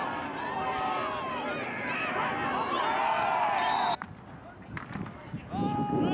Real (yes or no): yes